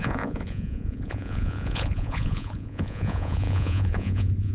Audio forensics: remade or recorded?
remade